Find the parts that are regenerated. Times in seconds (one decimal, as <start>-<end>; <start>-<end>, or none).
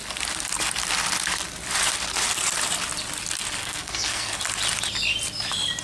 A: 3.6-4.4